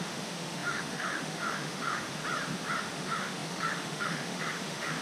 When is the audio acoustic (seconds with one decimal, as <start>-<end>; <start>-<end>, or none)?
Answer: 2.2-2.8